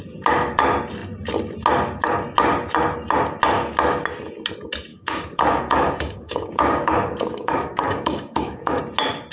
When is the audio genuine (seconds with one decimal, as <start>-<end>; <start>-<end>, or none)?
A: 0.0-4.9; 8.8-9.3